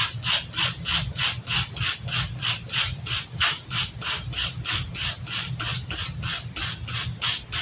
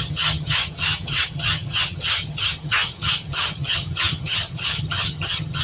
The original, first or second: first